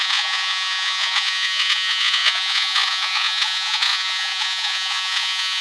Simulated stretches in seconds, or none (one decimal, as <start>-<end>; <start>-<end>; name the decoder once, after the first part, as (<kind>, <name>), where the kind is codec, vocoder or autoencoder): 0.0-5.6 (vocoder, Vocos)